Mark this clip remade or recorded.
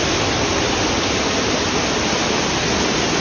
recorded